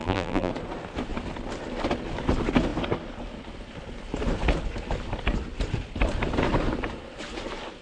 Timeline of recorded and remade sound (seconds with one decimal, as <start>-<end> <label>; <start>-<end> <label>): 0.0-0.5 remade; 0.5-7.8 recorded